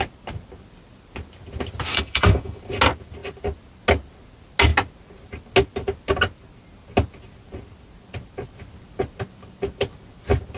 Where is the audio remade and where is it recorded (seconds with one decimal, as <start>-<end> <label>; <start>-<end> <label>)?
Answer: 0.0-1.9 recorded; 1.9-2.6 remade; 2.6-10.6 recorded